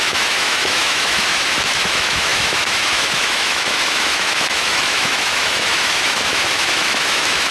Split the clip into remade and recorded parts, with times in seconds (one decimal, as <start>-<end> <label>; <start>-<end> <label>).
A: 0.0-7.5 remade